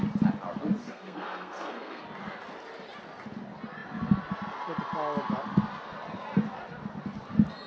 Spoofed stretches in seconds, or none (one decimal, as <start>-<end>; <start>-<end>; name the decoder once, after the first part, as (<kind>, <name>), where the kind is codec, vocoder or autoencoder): 0.8-2.0 (codec, SNAC)